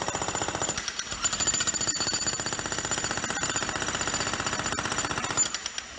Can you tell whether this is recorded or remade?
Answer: recorded